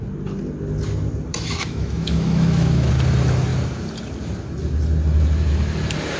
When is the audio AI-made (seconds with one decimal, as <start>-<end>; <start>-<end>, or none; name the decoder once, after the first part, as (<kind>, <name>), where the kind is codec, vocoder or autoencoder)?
1.3-2.9 (autoencoder, DAC-VAE)